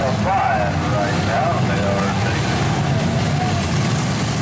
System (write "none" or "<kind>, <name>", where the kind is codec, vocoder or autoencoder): none